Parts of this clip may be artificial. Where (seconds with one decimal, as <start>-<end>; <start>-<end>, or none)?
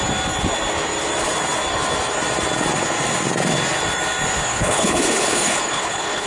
4.4-6.3